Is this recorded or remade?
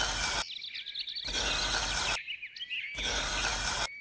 recorded